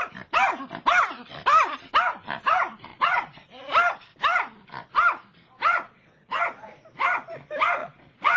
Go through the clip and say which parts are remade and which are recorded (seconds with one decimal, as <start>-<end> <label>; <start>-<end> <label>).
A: 0.0-2.9 recorded; 2.9-3.5 remade; 3.5-5.7 recorded; 5.7-6.8 remade; 6.8-7.8 recorded; 7.8-8.4 remade